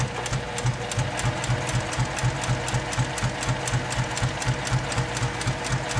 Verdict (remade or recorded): recorded